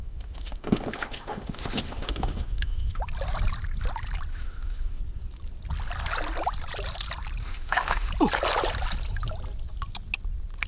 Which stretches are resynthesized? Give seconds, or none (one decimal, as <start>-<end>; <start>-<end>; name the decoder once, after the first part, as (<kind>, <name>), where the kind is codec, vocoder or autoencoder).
0.0-3.0 (autoencoder, DAC-VAE); 4.3-5.0; 7.4-8.1